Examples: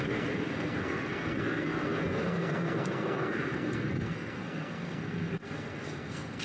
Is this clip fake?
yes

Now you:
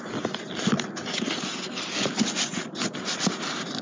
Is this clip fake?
no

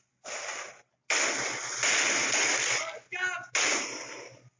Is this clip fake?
no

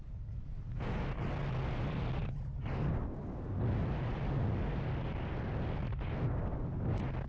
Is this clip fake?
no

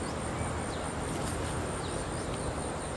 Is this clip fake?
no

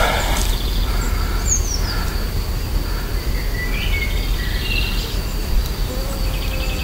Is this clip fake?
no